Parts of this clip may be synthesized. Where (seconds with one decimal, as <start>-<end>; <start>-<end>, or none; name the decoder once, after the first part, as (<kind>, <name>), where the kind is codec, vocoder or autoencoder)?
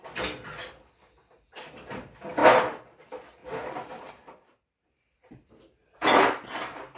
3.4-5.3 (vocoder, BigVGAN v2); 5.8-6.5